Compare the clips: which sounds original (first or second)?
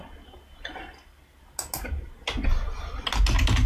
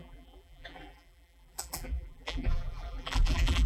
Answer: first